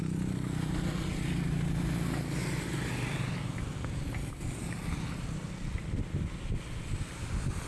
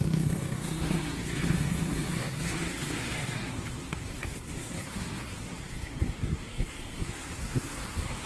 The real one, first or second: first